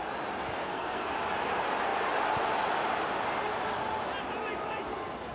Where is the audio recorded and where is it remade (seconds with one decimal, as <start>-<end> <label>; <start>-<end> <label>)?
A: 0.0-0.6 recorded; 0.6-1.1 remade; 1.1-5.3 recorded